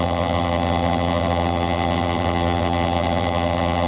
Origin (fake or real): fake